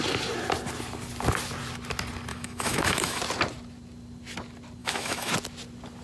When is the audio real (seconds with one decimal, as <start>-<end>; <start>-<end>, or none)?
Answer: 0.0-2.3; 3.2-4.8; 5.3-6.0